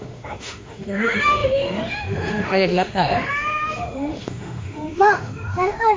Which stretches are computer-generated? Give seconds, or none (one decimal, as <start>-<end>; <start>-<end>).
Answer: 0.0-6.0